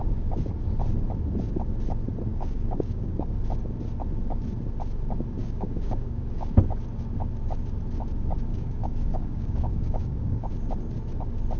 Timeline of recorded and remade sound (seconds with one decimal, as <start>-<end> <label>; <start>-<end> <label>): 0.0-2.3 recorded; 2.3-3.3 remade; 3.3-5.4 recorded; 5.4-6.6 remade; 6.6-8.5 recorded; 8.5-10.5 remade; 10.5-11.6 recorded